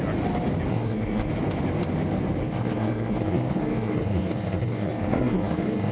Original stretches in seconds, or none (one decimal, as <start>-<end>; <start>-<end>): 0.0-0.7; 1.3-2.4